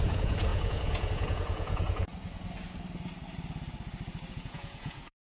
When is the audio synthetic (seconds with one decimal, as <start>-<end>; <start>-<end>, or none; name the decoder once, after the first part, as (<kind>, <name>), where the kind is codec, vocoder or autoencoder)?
0.0-2.1 (vocoder, Vocos); 4.3-5.4